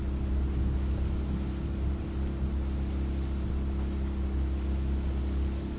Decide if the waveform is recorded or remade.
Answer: recorded